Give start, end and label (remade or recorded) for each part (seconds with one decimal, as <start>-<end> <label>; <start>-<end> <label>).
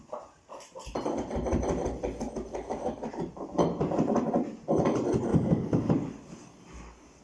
0.0-2.5 recorded; 2.5-3.1 remade; 3.1-5.3 recorded; 5.3-7.2 remade